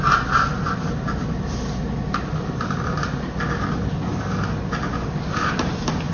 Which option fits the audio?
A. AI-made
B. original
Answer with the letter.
B